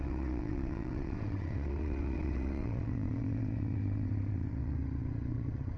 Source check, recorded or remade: remade